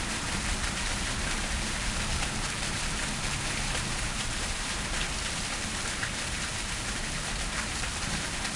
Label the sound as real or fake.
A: fake